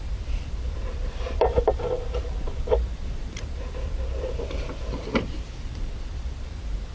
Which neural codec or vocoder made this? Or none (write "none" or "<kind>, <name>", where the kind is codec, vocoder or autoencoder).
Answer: vocoder, BigVGAN v2